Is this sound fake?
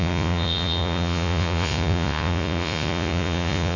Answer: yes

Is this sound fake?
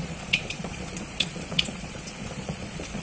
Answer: yes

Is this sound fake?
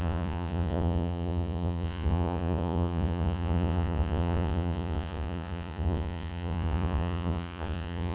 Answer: yes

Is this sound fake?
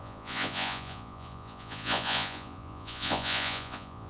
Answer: yes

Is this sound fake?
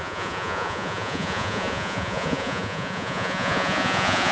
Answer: yes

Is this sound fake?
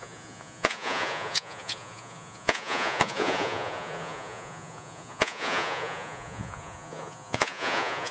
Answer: yes